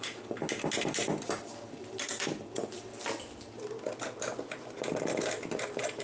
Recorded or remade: recorded